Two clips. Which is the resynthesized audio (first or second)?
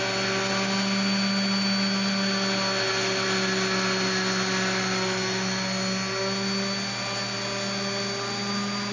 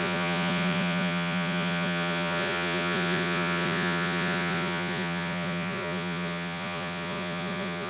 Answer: second